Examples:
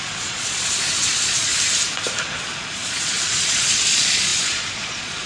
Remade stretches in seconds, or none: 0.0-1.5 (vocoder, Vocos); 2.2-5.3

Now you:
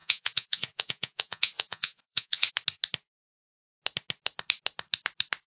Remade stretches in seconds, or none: 0.0-2.5 (vocoder, Vocos)

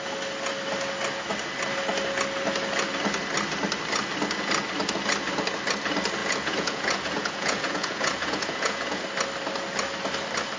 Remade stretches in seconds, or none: 6.2-9.0 (vocoder, Vocos)

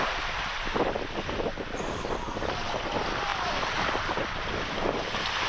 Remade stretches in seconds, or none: none

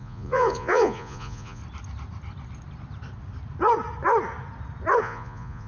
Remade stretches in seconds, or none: 0.0-1.6 (vocoder, Vocos); 5.0-5.7

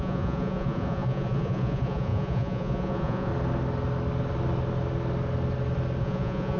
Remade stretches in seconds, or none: 0.0-3.3 (vocoder, Vocos); 6.0-6.6

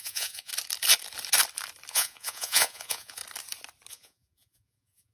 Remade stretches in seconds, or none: 0.0-0.5 (vocoder, Vocos); 1.9-3.2; 3.9-5.1

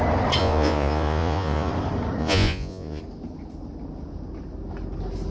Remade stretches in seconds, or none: 0.4-1.7 (vocoder, Vocos); 2.2-3.0